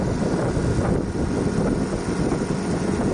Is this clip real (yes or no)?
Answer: yes